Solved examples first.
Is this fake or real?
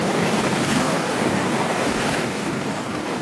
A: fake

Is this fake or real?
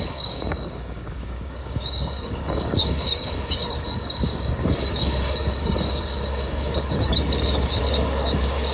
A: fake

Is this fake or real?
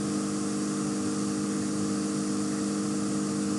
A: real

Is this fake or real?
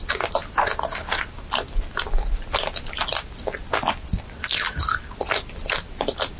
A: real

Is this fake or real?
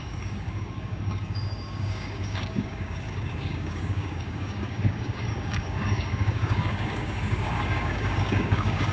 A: fake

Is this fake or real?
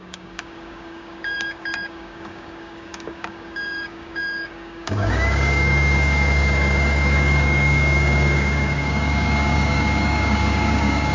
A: fake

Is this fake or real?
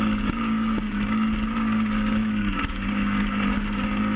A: fake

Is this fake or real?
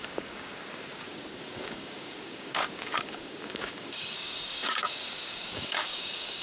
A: fake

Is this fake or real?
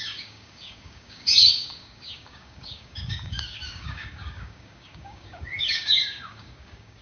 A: fake